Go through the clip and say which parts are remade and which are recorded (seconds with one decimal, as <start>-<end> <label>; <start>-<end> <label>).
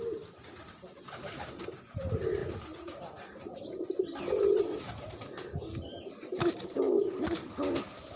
0.0-8.2 recorded